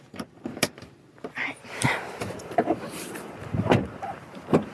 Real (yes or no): no